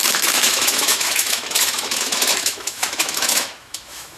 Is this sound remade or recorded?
remade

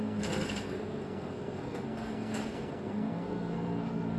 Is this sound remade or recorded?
remade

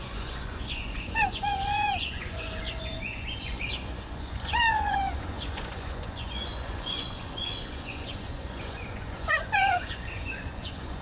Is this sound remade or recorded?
remade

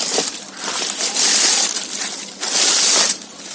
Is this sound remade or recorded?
recorded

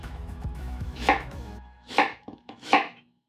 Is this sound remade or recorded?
remade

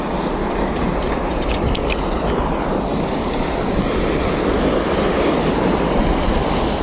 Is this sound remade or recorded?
recorded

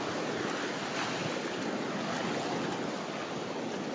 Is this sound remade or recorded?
recorded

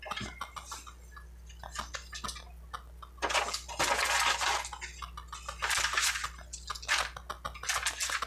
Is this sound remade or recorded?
recorded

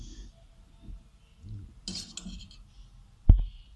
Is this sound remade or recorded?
recorded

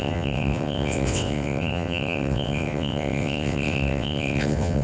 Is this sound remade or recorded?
remade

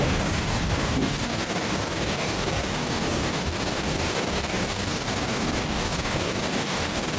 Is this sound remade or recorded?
remade